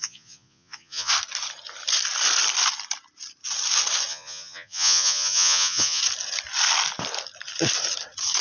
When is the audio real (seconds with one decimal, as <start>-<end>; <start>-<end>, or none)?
1.1-4.1; 6.0-8.4